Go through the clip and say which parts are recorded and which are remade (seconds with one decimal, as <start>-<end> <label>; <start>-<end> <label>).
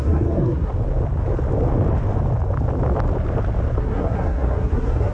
0.0-0.7 remade; 0.7-3.8 recorded; 3.8-5.1 remade